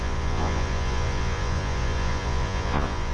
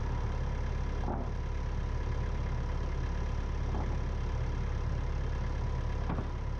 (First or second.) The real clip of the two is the second